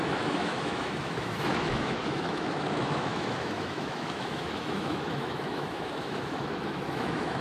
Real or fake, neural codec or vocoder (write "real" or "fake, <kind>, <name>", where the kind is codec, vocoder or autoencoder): fake, autoencoder, DAC-VAE